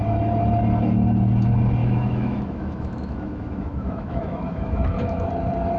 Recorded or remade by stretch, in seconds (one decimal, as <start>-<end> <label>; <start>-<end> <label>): 0.0-1.8 recorded; 1.8-5.3 remade; 5.3-5.8 recorded